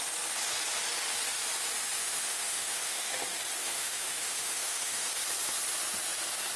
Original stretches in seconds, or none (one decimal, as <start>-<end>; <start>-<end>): 0.0-2.0; 3.1-3.6; 5.1-6.6